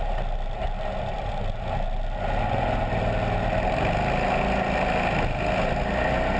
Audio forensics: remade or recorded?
recorded